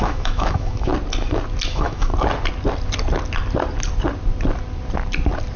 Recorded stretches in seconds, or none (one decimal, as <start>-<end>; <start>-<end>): 0.9-1.7; 2.1-5.6